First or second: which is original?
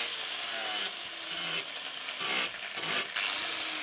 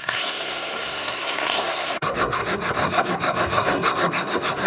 first